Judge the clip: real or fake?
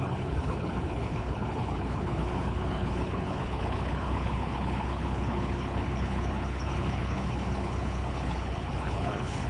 fake